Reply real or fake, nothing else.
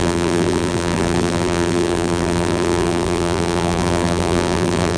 fake